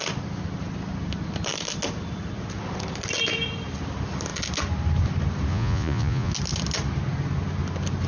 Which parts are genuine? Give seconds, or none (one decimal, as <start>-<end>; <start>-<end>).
0.0-5.5; 6.3-8.1